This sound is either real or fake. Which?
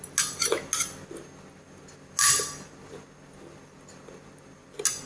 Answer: real